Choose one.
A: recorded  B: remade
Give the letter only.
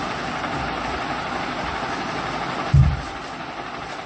A